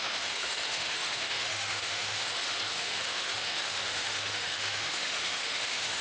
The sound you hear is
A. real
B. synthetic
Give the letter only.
B